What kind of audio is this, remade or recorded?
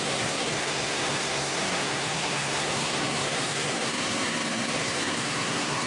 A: remade